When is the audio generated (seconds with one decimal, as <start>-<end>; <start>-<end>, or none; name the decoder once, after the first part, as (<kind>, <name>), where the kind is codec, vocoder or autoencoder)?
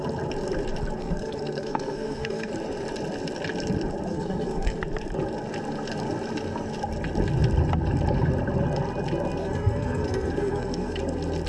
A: 1.0-2.5 (codec, SNAC); 4.1-4.8; 9.4-11.0